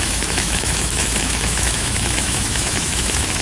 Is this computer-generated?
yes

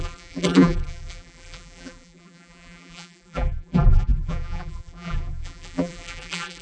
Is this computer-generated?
yes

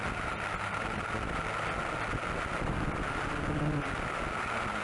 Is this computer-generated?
no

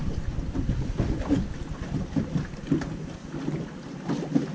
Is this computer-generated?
no